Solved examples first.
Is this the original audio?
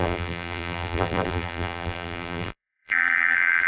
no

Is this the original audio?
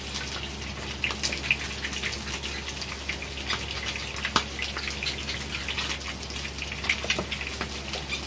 yes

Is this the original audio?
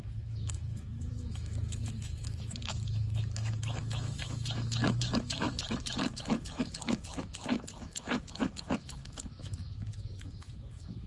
no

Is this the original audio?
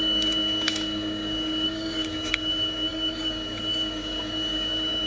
no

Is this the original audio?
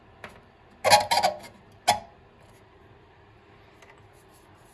yes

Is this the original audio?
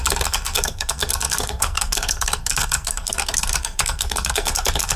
no